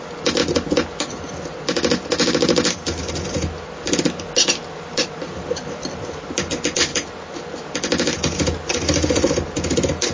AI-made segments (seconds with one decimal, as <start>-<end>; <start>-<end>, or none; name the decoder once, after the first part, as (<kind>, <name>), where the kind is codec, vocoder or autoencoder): 6.9-7.5 (vocoder, BigVGAN v2)